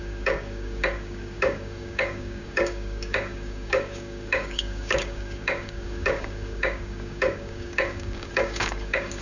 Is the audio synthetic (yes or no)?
yes